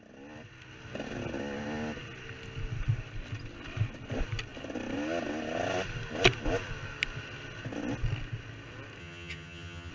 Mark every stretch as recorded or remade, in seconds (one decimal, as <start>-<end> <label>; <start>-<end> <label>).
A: 0.0-9.0 recorded; 9.0-9.9 remade